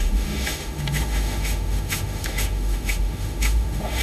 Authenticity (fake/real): fake